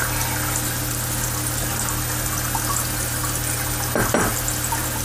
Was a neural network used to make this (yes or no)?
no